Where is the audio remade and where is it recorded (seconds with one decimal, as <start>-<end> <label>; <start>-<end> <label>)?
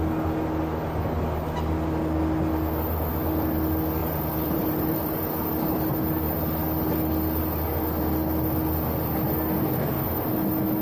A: 0.0-4.0 recorded; 4.0-5.3 remade; 5.3-10.8 recorded